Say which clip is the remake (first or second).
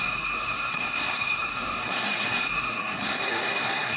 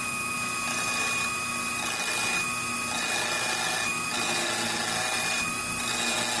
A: first